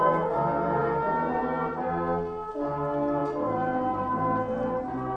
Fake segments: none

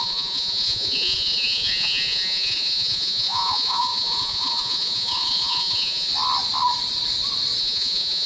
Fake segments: 0.0-6.1 (vocoder, Vocos); 7.6-8.3

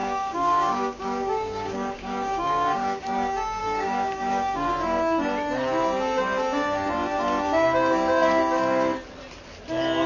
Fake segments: 0.0-3.0 (codec, DAC); 3.6-4.7

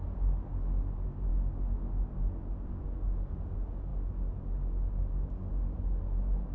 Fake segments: none

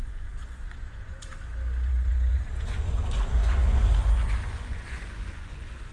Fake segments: 0.0-1.3 (vocoder, Vocos); 1.9-5.9